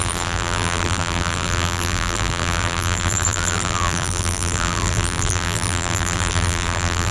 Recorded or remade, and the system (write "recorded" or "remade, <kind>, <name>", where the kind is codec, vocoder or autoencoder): remade, vocoder, BigVGAN v2